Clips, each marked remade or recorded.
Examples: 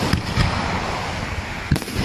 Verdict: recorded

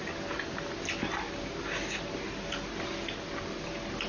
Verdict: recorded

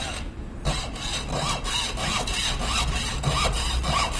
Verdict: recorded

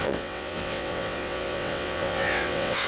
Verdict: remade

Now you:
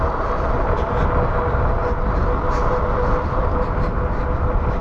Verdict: recorded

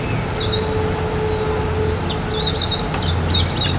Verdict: recorded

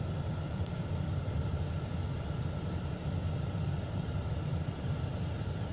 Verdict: recorded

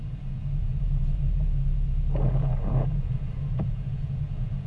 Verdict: remade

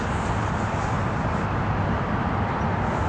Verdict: recorded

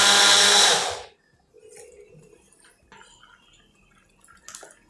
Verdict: recorded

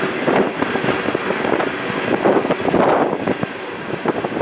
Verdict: recorded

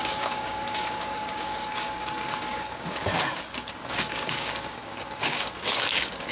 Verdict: remade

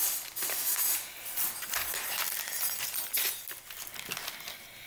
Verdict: recorded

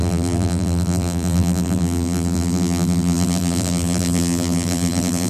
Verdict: remade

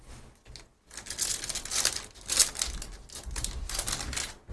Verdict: recorded